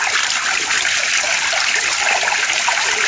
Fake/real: real